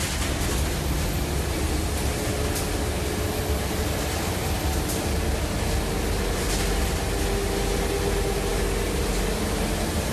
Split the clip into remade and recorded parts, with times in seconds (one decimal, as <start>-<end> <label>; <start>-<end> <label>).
0.0-10.1 recorded